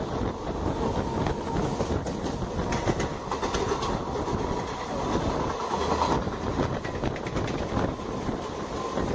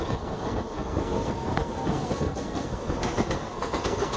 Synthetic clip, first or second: second